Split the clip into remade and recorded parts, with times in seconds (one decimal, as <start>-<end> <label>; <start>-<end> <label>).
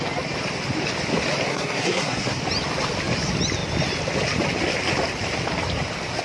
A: 0.0-1.5 recorded; 1.5-2.4 remade; 2.4-6.2 recorded